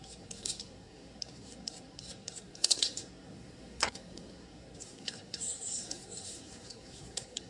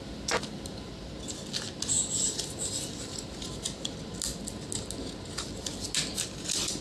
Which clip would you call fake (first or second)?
first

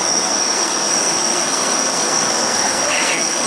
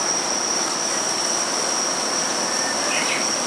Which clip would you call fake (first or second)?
first